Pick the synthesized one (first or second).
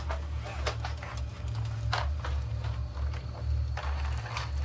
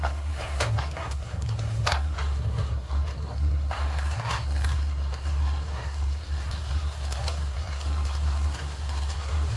second